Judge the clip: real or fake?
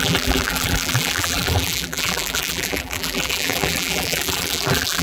fake